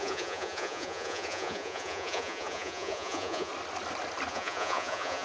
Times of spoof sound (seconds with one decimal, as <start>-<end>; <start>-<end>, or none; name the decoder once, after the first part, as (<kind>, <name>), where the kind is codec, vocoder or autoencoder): 0.0-3.5 (vocoder, Vocos); 4.3-5.2